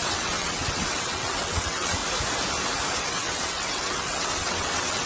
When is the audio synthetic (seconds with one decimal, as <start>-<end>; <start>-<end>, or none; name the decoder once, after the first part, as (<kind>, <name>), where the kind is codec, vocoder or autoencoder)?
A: 0.0-2.0 (vocoder, WaveNeXt); 3.0-5.1